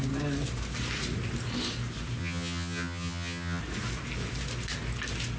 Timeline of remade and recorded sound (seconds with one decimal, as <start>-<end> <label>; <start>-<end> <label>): 0.0-2.2 recorded; 2.2-3.6 remade; 3.6-5.4 recorded